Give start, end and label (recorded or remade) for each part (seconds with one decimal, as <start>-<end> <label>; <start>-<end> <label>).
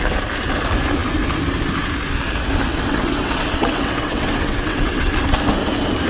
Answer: 0.0-2.7 recorded; 2.7-5.0 remade; 5.0-6.1 recorded